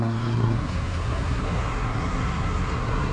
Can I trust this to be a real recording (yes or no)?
no